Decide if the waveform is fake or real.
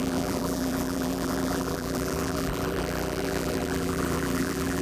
fake